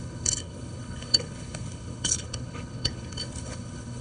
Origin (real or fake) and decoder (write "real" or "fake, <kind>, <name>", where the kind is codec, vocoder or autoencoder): fake, codec, HILCodec